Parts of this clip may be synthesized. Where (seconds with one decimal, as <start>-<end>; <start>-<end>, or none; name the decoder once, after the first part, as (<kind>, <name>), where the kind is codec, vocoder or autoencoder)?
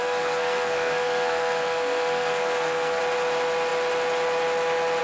0.0-3.0 (codec, SNAC)